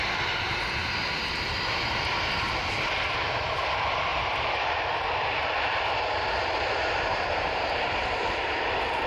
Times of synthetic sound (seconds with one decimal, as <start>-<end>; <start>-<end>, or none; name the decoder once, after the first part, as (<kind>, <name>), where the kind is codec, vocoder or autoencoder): 0.0-9.1 (vocoder, BigVGAN v2)